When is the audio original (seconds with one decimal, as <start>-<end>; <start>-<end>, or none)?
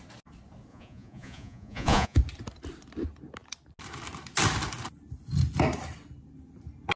0.0-0.7; 2.2-7.0